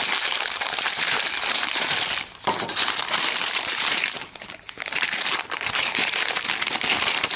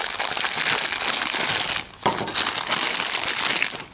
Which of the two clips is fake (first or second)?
first